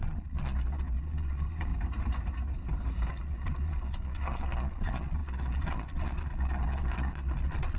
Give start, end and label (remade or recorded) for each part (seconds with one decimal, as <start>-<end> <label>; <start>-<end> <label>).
0.0-1.7 remade; 1.7-3.1 recorded; 3.1-7.8 remade